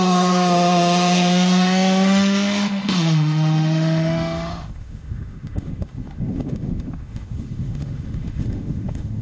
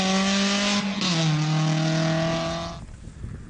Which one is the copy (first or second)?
first